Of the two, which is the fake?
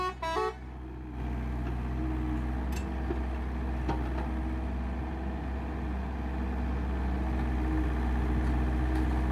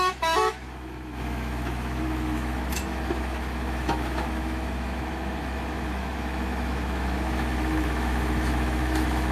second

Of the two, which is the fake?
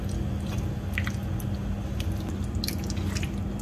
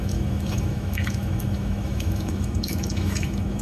second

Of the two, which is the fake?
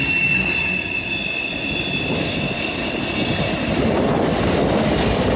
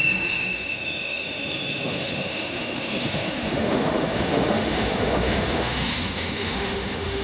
second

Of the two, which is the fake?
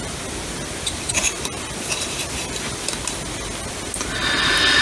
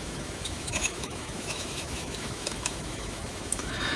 second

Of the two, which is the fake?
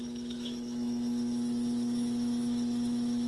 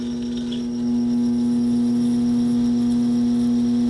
first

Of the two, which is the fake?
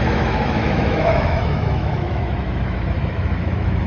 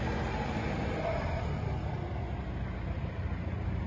first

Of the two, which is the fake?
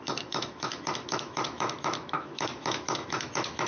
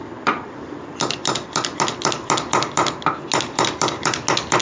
first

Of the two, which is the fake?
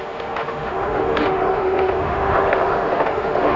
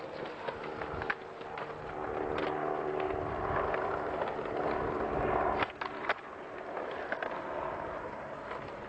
first